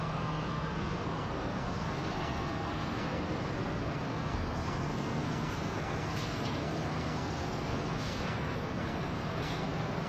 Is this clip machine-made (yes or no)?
yes